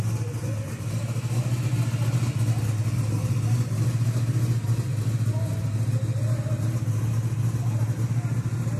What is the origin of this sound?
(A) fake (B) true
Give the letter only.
B